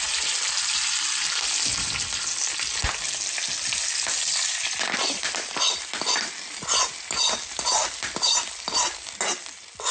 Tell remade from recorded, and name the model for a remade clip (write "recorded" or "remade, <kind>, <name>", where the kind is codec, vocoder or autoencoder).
recorded